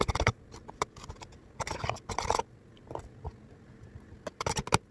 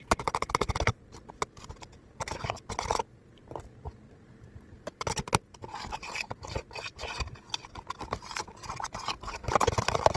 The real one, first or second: first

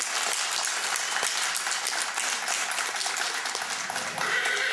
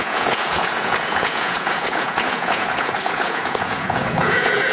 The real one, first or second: first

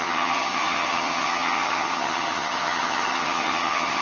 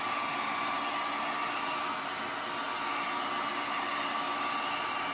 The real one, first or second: second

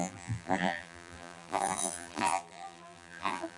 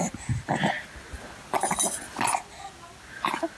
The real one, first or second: second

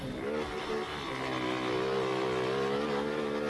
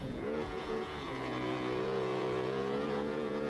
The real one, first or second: first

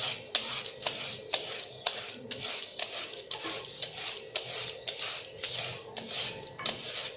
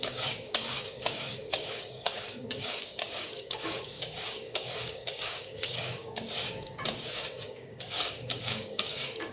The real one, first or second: first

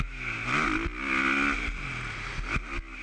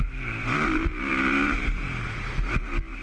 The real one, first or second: first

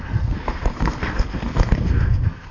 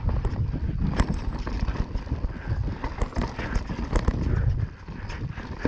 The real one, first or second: second